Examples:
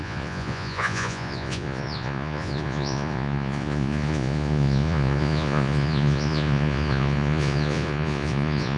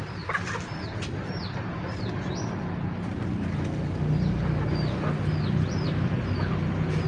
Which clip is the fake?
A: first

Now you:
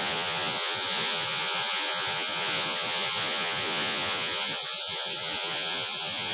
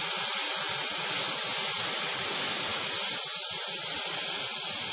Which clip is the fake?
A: first